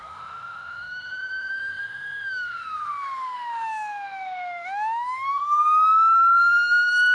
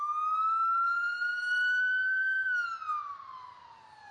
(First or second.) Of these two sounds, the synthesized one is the first